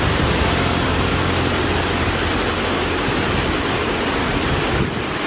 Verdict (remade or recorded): recorded